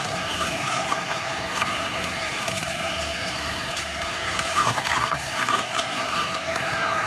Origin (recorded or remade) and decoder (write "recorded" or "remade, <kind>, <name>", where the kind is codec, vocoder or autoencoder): remade, codec, SNAC